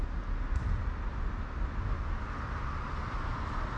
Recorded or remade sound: recorded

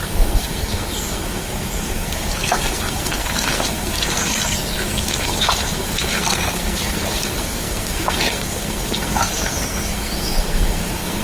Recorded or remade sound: remade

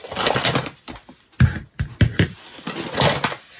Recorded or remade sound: recorded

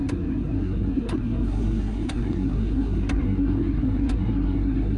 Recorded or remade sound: remade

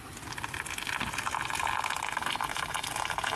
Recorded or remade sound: recorded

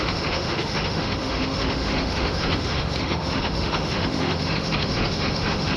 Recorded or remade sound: remade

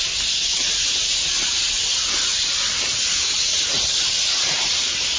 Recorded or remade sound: recorded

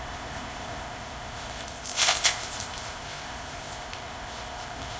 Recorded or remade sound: remade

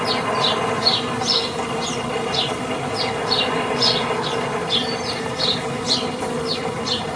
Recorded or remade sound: recorded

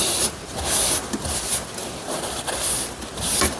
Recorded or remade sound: recorded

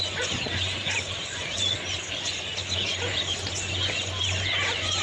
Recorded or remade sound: remade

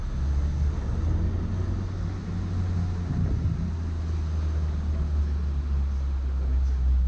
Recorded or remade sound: recorded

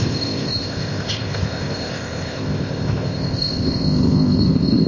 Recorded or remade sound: remade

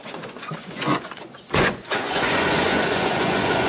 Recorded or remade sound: remade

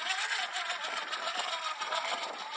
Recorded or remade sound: recorded